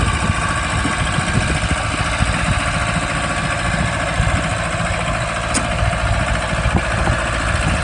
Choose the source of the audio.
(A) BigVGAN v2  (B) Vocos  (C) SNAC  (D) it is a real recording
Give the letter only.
D